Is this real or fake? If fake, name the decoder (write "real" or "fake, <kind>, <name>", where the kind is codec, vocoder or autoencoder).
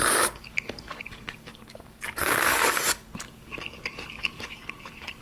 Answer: fake, codec, DAC